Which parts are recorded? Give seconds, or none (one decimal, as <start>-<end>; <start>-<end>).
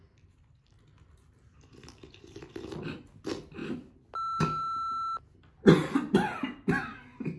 0.0-7.4